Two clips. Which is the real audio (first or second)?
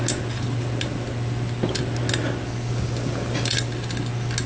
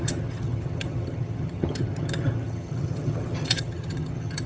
first